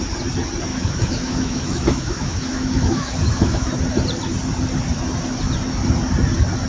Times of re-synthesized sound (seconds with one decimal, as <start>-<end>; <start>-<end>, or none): 0.7-3.7